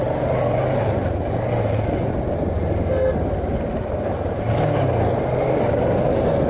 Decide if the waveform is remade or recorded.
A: recorded